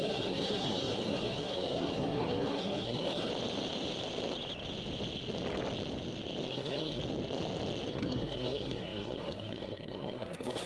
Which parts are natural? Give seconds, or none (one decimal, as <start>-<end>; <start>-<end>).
3.3-6.5; 7.0-7.9